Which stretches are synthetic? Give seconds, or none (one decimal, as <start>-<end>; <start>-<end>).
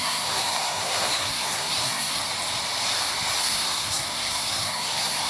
0.0-2.2; 3.4-5.3